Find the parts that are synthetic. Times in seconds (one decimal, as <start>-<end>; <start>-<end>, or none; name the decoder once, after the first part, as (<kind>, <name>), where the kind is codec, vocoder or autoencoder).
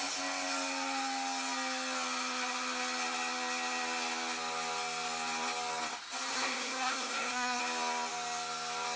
6.3-7.6 (codec, SNAC)